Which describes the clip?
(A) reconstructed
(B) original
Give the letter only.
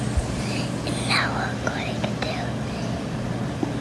B